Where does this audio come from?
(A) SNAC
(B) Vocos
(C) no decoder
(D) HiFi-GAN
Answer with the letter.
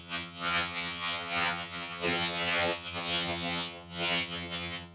D